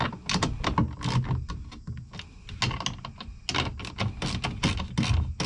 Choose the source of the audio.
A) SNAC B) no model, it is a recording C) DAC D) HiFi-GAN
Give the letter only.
B